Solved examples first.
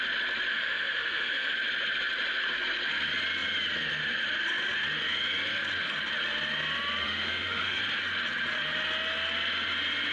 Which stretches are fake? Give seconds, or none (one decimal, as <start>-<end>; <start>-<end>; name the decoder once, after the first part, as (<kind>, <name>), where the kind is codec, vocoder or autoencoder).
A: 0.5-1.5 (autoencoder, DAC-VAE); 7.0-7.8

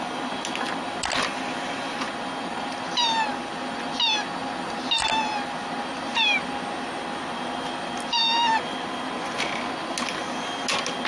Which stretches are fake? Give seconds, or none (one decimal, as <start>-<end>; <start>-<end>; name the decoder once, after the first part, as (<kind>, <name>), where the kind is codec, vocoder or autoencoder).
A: none

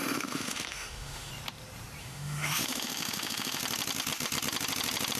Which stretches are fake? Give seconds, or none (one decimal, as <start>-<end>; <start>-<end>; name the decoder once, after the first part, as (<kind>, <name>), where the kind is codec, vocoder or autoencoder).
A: 0.0-1.3 (autoencoder, DAC-VAE); 2.0-3.6

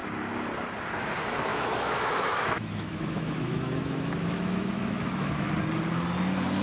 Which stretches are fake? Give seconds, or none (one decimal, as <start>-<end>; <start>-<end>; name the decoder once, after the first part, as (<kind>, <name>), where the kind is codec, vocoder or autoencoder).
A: 1.5-5.5 (autoencoder, DAC-VAE)

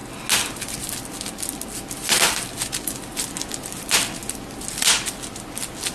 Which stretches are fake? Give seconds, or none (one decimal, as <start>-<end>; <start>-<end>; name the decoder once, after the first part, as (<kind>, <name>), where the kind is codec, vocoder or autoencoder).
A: none

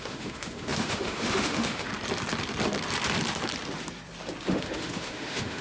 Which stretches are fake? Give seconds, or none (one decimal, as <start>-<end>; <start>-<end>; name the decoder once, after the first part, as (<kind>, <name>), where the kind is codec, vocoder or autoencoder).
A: 0.0-1.9 (autoencoder, DAC-VAE); 4.5-5.6

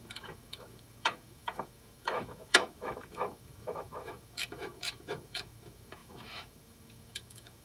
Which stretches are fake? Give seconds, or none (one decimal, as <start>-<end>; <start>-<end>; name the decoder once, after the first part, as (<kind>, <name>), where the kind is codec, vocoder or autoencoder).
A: 0.0-7.6 (autoencoder, DAC-VAE)

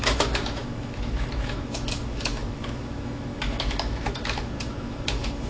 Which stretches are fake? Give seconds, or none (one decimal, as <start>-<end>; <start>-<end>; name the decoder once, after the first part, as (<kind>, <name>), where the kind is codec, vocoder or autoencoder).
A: 0.0-5.5 (autoencoder, DAC-VAE)